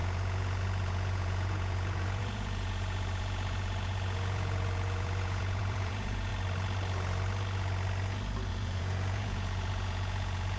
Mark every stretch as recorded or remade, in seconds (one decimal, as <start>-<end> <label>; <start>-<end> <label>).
0.0-6.3 remade; 6.3-8.5 recorded; 8.5-10.6 remade